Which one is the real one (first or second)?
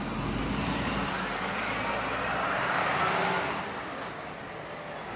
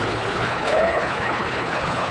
first